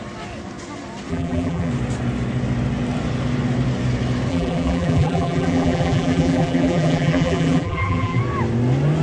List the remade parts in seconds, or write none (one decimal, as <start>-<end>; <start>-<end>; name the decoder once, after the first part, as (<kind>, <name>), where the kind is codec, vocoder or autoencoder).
1.1-1.7 (vocoder, BigVGAN v2); 4.3-8.2